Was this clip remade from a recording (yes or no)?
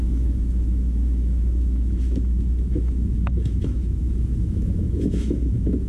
yes